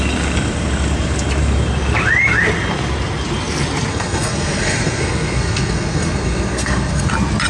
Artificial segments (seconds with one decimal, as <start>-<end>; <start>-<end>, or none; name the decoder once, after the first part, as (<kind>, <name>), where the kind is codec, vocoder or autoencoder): 3.9-7.1 (codec, SNAC)